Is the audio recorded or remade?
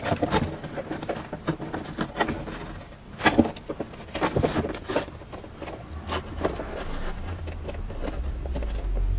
recorded